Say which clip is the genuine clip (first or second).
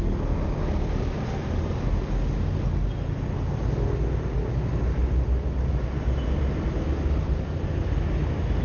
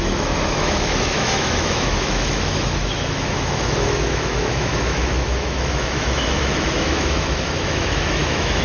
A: first